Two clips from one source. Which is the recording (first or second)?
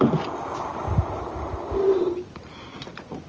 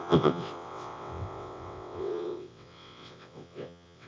first